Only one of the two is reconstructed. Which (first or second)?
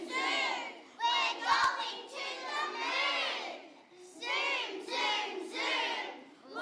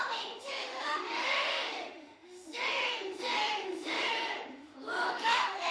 second